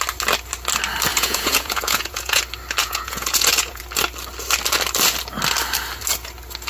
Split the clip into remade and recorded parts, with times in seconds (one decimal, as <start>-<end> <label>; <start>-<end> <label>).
0.0-1.1 recorded; 1.1-2.4 remade; 2.4-2.8 recorded; 2.8-3.8 remade; 3.8-6.7 recorded